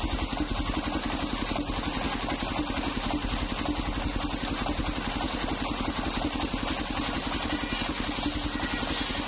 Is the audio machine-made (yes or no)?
no